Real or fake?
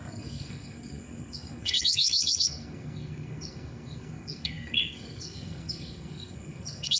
fake